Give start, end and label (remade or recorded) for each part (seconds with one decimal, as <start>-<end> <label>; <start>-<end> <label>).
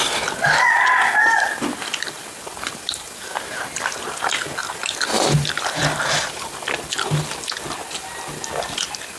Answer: 0.0-2.5 recorded; 2.5-3.9 remade; 3.9-4.6 recorded; 4.6-6.4 remade; 6.4-9.2 recorded